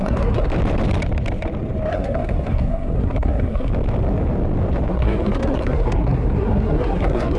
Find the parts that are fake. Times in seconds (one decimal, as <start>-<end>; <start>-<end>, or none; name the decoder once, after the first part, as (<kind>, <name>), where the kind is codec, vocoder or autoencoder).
0.0-0.5 (codec, SNAC); 1.9-3.7; 4.9-7.4